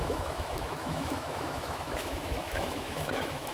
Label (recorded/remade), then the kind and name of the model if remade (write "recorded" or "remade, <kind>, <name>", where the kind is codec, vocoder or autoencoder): remade, autoencoder, DAC-VAE